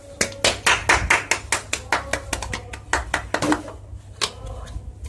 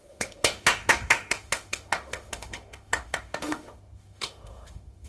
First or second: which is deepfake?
second